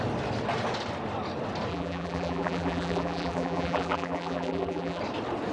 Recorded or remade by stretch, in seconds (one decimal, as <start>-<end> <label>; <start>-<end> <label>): 0.0-1.7 recorded; 1.7-5.0 remade; 5.0-5.5 recorded